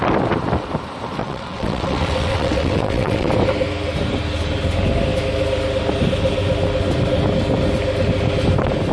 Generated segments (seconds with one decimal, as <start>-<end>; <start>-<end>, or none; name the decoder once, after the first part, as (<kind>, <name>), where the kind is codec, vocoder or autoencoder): 1.2-3.3 (vocoder, WaveNeXt)